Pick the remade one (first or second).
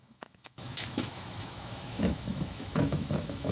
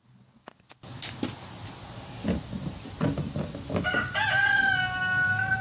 first